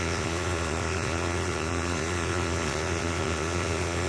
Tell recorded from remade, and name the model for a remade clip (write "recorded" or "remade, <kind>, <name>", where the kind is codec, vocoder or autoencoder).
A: remade, vocoder, Vocos